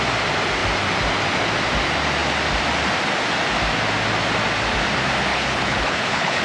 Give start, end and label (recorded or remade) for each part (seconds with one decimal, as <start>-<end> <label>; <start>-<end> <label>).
0.0-5.3 recorded; 5.3-6.4 remade